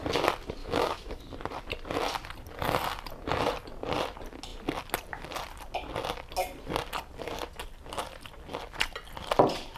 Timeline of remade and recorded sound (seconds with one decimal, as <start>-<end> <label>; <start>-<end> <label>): 0.0-0.6 recorded; 0.6-1.2 remade; 1.2-9.8 recorded